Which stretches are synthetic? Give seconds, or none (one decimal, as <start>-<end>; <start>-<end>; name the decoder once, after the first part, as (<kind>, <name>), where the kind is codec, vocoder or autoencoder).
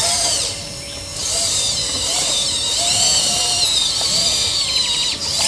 0.0-5.5 (vocoder, BigVGAN v2)